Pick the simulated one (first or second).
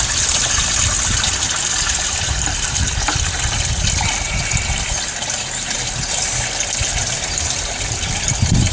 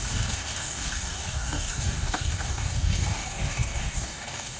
second